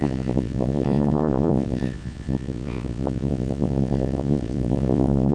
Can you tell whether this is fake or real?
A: fake